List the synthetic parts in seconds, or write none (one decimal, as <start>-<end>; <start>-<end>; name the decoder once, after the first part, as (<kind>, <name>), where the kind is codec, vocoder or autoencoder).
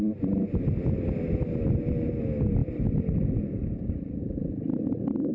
none